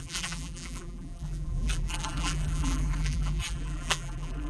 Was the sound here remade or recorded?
remade